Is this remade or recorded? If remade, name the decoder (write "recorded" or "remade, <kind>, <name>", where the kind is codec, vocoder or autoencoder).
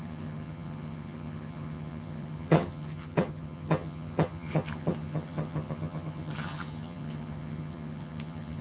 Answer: remade, vocoder, HiFi-GAN